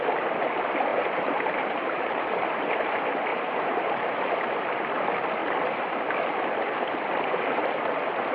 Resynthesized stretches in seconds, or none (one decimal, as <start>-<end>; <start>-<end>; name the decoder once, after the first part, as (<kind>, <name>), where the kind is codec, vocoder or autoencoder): 0.9-2.4 (vocoder, BigVGAN v2); 3.3-4.5